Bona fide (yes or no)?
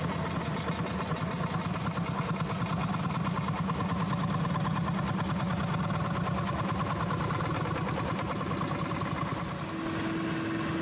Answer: yes